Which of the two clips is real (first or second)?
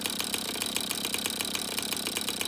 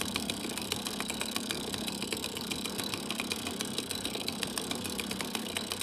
first